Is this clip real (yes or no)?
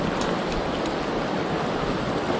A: yes